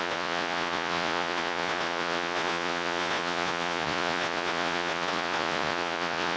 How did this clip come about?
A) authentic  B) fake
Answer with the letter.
B